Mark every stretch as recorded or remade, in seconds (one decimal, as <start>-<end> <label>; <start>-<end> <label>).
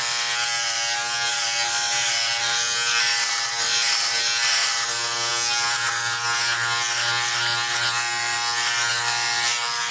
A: 0.0-9.9 recorded